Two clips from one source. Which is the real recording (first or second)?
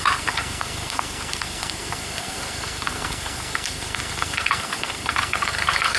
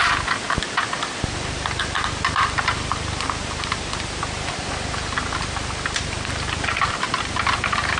second